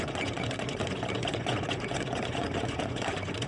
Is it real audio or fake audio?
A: fake